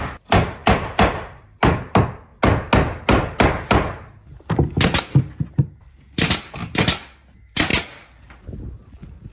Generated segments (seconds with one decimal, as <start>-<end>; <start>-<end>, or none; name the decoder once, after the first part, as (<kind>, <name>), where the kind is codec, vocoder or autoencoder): none